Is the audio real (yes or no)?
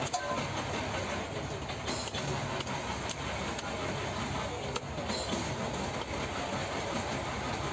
yes